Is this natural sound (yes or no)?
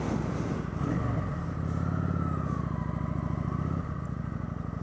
yes